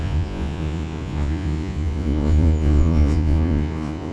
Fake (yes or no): yes